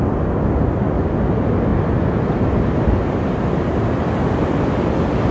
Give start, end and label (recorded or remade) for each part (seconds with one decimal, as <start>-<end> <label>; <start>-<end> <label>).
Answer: 0.0-5.3 recorded